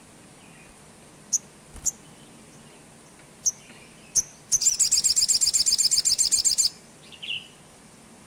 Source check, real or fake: real